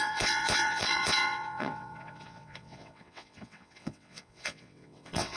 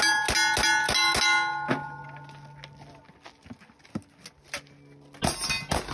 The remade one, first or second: first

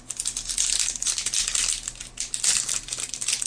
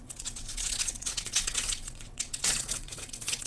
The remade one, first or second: second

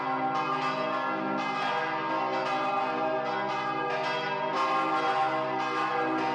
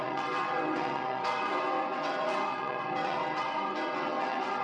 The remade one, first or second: second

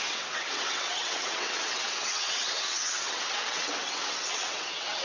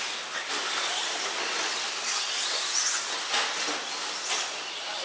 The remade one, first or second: first